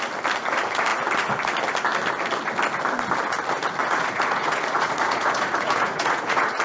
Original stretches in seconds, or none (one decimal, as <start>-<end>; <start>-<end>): 0.0-3.8